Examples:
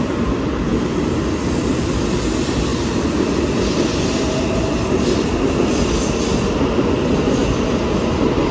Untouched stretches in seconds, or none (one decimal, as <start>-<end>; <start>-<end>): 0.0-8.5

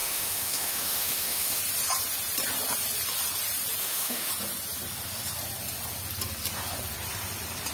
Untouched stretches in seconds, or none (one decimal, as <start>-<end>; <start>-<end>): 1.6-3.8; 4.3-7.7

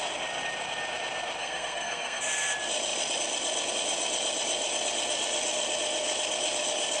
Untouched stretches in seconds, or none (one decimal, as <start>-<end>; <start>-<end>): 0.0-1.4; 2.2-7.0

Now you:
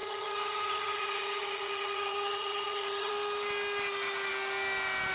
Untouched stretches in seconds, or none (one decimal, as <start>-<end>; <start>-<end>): 3.1-5.1

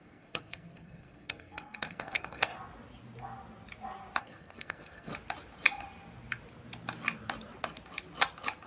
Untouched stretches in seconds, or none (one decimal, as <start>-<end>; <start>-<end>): 2.5-4.2; 5.1-8.7

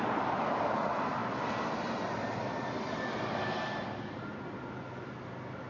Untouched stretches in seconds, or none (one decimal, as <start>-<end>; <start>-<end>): 0.0-5.7

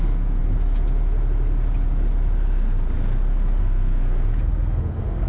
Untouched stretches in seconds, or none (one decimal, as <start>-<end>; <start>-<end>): 0.4-3.6